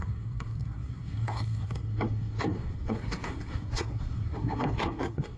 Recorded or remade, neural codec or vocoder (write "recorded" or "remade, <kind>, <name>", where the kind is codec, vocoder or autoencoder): remade, codec, SNAC